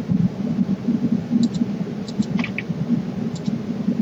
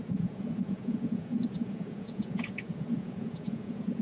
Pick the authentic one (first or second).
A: first